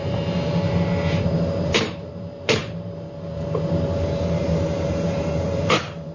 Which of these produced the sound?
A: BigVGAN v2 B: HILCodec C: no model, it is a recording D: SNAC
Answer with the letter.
A